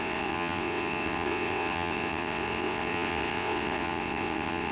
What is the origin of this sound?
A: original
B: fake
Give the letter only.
B